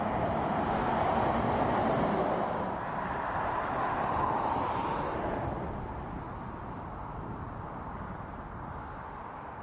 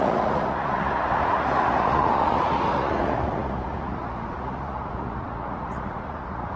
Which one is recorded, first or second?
first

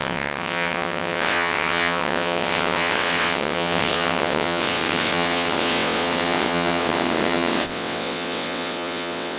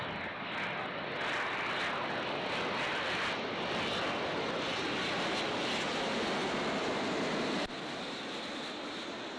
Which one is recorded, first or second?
second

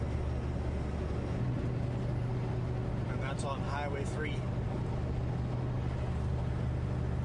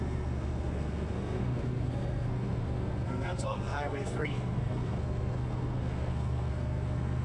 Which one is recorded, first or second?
first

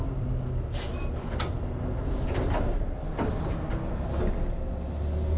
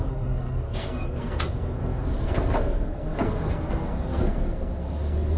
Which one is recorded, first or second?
first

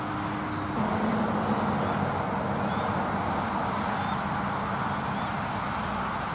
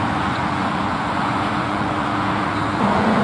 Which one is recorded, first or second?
first